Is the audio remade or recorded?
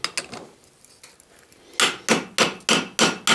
recorded